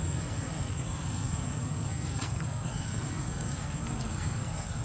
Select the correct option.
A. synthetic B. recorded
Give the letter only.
A